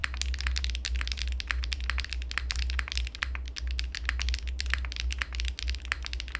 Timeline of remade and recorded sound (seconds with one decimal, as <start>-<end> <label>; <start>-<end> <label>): 0.0-6.4 recorded